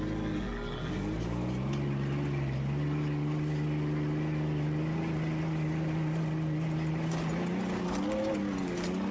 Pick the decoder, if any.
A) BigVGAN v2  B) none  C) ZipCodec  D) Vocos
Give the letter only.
B